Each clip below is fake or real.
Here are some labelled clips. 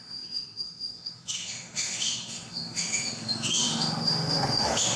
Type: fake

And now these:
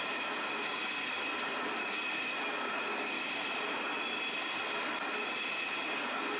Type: real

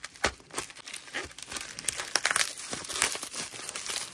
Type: real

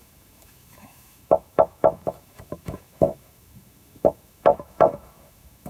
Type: fake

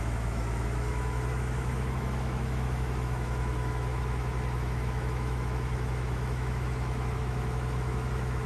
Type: fake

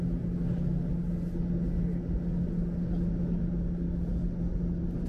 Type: real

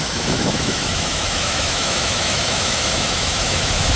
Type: fake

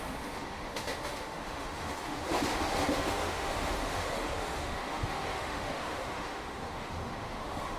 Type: fake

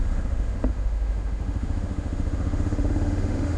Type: fake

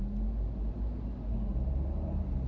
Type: real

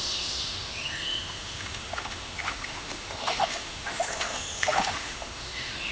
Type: fake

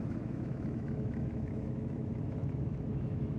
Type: fake